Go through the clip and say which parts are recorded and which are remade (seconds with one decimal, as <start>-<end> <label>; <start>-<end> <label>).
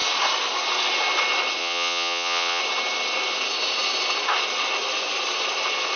0.0-1.6 recorded; 1.6-2.6 remade; 2.6-6.0 recorded